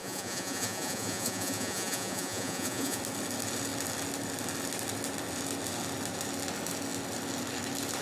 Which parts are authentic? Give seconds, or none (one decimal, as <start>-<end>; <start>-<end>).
3.0-8.0